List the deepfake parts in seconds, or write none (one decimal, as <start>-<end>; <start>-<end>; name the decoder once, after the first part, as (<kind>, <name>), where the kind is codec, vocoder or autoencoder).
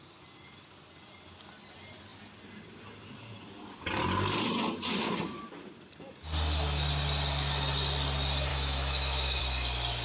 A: 8.5-9.4 (autoencoder, DAC-VAE)